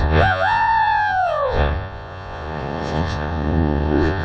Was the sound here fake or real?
fake